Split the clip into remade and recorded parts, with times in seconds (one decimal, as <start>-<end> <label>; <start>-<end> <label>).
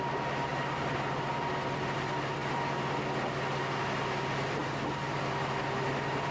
0.0-6.3 recorded